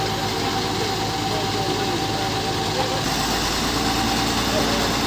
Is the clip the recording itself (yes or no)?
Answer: yes